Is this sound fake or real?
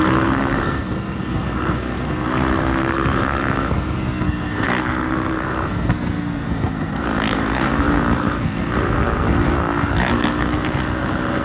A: fake